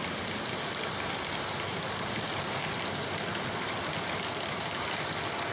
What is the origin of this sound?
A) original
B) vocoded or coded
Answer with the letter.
A